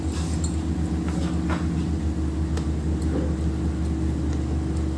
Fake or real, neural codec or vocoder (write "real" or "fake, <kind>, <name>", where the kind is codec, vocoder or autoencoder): real